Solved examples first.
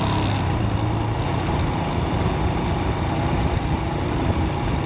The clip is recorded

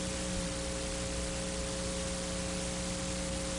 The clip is recorded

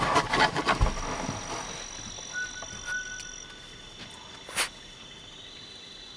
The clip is recorded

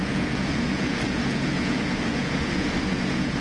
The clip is remade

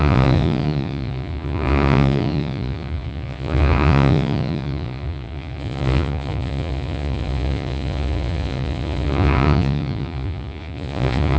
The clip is remade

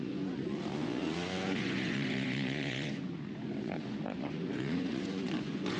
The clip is remade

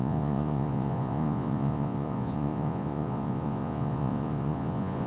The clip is remade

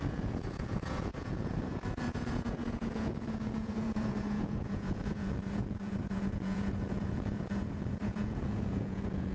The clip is remade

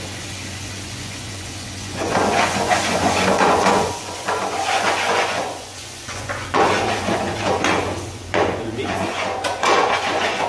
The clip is remade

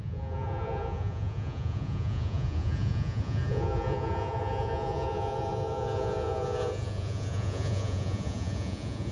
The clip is remade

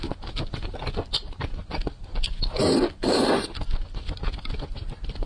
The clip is recorded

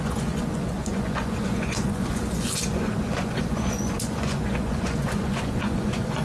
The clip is remade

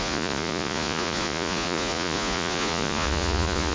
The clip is remade